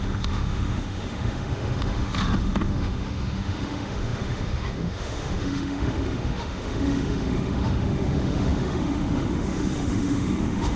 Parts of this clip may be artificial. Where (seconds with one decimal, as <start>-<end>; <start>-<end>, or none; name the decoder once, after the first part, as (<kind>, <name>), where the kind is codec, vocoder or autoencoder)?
0.0-10.8 (autoencoder, DAC-VAE)